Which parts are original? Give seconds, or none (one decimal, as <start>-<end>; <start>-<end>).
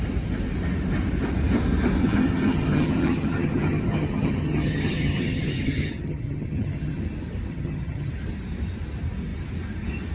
0.0-2.0; 7.0-7.5; 8.1-10.1